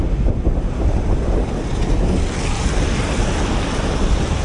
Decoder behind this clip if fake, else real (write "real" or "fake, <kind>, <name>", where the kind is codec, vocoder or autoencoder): real